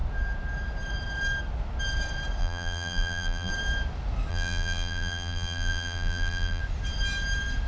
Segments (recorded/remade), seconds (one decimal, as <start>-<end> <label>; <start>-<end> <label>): 0.0-2.4 recorded; 2.4-3.5 remade; 3.5-4.3 recorded; 4.3-6.6 remade; 6.6-7.7 recorded